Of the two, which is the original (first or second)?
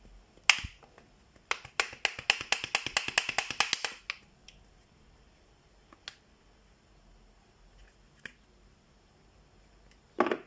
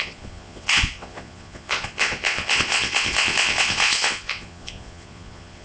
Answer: first